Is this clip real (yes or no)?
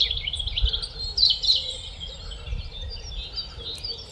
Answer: yes